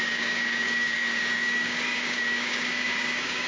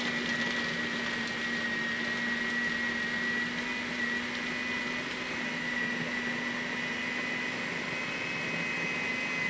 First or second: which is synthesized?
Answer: first